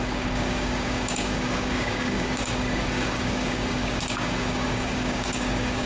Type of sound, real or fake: fake